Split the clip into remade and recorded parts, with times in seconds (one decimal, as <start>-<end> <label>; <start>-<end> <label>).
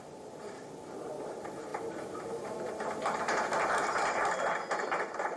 0.0-5.4 recorded